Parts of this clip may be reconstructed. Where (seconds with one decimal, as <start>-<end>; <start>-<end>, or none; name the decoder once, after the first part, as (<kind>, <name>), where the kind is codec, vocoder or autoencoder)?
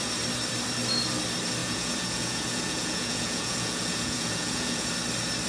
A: 1.6-4.9 (vocoder, Vocos)